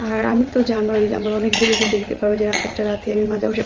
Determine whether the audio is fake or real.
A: fake